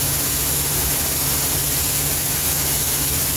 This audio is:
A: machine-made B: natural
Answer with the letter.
B